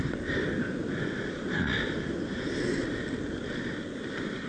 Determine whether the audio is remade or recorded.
recorded